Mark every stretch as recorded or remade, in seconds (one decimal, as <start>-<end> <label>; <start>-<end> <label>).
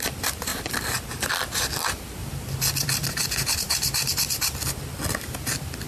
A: 0.0-2.2 recorded; 2.2-5.9 remade